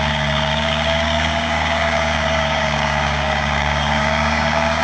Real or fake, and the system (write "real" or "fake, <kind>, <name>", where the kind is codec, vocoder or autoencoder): fake, codec, DAC